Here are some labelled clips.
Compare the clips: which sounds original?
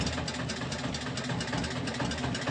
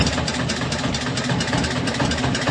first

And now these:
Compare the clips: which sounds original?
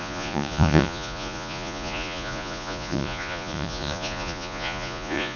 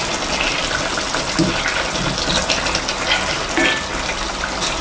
second